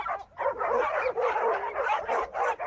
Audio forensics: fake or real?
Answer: real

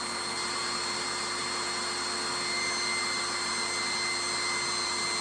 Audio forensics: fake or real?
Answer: real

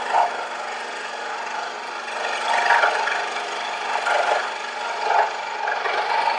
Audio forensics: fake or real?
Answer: real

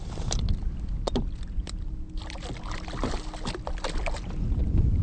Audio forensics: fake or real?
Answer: real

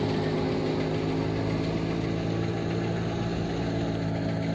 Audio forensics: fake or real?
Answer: real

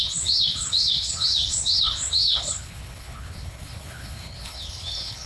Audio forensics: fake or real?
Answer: fake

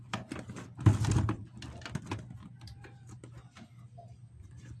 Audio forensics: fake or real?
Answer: real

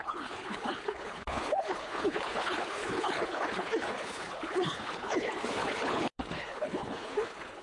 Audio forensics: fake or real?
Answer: fake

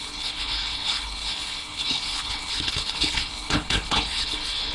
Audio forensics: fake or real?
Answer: fake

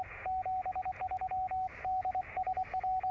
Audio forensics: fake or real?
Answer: real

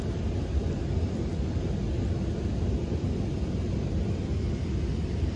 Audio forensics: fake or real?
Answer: real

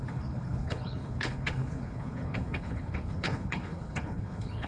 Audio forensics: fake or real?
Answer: fake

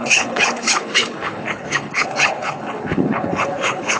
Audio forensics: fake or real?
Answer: fake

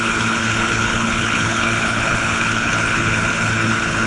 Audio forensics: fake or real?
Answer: fake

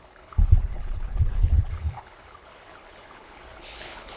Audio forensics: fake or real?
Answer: fake